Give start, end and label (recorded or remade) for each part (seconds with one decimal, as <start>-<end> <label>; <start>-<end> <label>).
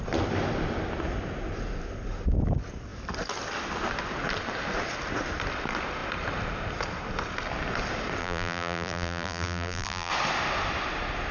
0.0-8.2 recorded; 8.2-10.1 remade; 10.1-11.3 recorded